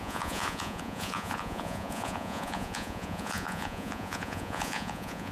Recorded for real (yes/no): no